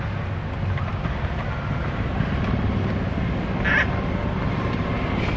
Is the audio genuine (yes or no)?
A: yes